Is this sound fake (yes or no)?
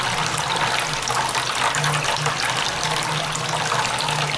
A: no